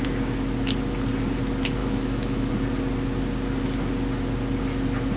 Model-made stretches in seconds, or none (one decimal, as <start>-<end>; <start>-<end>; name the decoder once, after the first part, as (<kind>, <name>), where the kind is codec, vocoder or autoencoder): 1.8-2.5 (autoencoder, DAC-VAE)